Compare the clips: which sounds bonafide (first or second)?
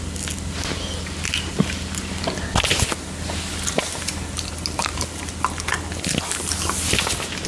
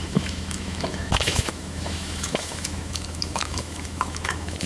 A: first